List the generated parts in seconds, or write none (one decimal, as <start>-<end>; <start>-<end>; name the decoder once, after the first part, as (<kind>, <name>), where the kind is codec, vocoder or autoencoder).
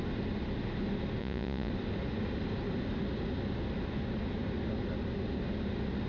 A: 1.2-1.7 (vocoder, Vocos)